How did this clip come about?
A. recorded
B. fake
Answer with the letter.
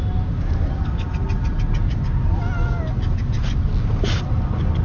A